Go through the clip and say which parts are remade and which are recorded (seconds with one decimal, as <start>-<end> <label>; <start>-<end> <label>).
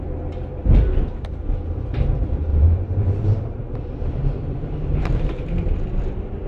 0.0-2.5 recorded; 2.5-5.7 remade; 5.7-6.5 recorded